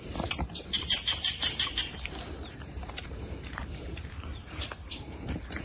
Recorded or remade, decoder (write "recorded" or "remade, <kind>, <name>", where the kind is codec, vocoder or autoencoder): remade, vocoder, BigVGAN v2